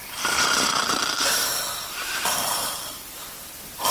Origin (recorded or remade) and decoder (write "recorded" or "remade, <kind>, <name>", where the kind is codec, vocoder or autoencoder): remade, vocoder, BigVGAN v2